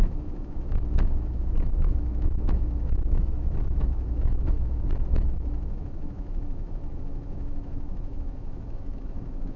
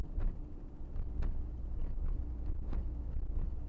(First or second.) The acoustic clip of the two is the second